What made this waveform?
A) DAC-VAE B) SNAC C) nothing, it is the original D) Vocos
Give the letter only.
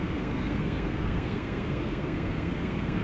B